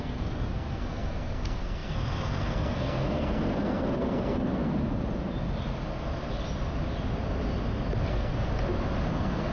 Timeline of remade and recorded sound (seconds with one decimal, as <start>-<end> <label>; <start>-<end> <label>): 0.0-4.7 remade; 4.7-8.1 recorded; 8.1-8.5 remade; 8.5-9.1 recorded; 9.1-9.5 remade